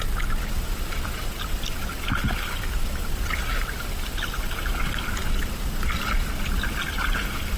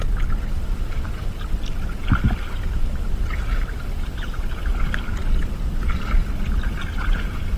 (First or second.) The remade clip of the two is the second